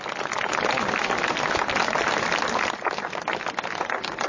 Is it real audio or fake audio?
real